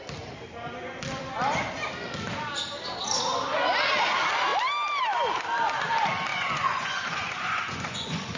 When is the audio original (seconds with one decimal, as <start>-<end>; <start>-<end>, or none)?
0.0-6.3